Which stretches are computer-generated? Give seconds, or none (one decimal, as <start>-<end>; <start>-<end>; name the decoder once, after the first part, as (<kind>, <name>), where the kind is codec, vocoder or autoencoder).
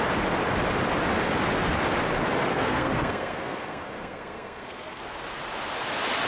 2.5-5.0 (codec, SNAC)